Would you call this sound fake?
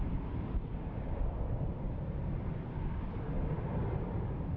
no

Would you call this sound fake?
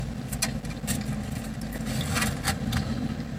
no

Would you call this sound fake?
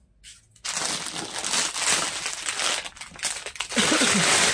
no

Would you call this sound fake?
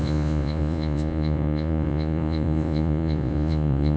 yes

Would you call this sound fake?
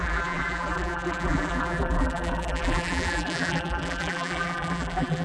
yes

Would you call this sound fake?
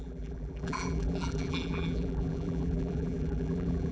yes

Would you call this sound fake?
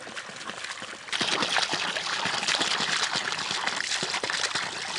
no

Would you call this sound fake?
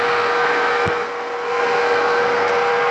yes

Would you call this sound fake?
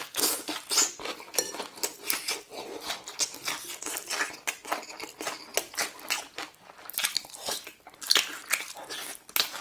no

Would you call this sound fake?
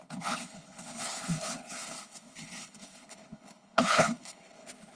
yes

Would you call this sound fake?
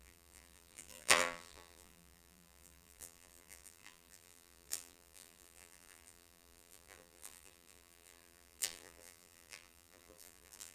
yes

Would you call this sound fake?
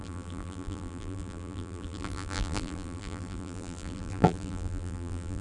yes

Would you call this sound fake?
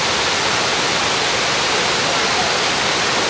no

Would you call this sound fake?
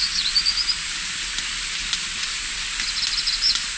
no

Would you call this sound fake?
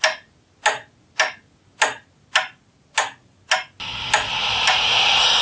no